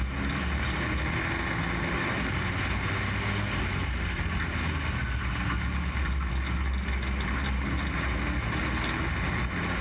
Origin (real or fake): real